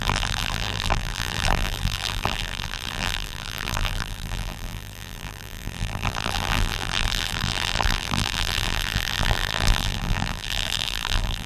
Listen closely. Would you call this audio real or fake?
fake